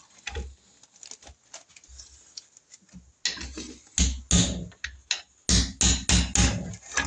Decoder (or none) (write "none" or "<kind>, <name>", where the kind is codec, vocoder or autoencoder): none